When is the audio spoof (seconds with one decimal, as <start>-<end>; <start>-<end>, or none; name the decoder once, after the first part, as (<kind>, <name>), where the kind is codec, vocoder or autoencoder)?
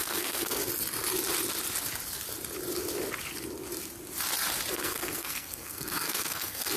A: 0.0-0.6 (codec, SNAC); 4.7-6.8